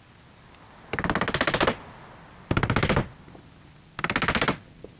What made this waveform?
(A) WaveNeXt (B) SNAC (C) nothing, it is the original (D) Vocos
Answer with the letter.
C